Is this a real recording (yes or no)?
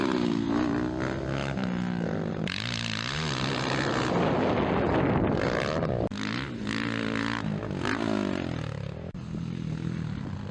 yes